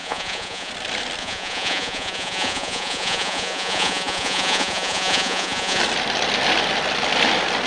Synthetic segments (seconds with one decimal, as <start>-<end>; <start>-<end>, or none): 0.0-0.7; 1.2-5.8